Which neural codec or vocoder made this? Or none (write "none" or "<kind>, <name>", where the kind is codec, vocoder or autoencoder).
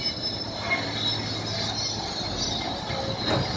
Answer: none